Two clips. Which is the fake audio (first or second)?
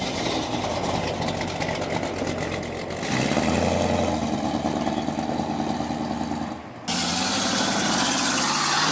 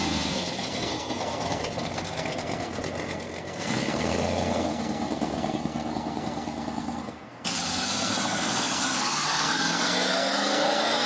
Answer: second